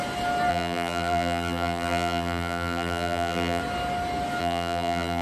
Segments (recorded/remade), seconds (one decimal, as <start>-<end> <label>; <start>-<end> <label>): 0.0-0.5 recorded; 0.5-3.6 remade; 3.6-4.4 recorded; 4.4-5.2 remade